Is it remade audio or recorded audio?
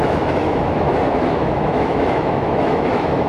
remade